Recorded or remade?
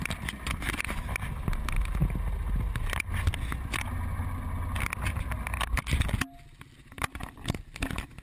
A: recorded